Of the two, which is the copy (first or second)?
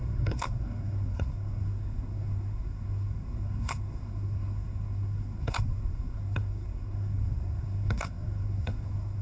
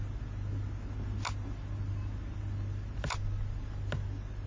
first